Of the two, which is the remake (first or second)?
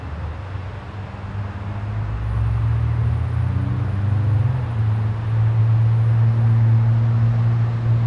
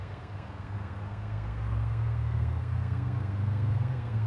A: second